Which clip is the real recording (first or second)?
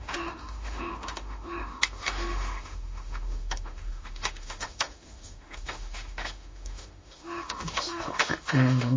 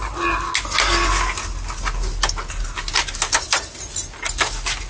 second